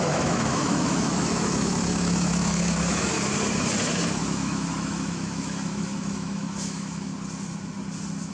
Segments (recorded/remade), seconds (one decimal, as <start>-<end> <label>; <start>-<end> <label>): 0.0-3.1 remade; 3.1-4.2 recorded; 4.2-7.1 remade; 7.1-8.3 recorded